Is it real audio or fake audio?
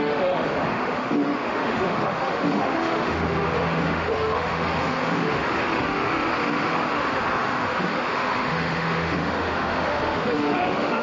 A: fake